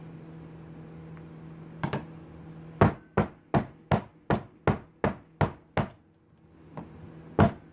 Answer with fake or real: real